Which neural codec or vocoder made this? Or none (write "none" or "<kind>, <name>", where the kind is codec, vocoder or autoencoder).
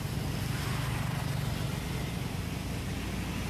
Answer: none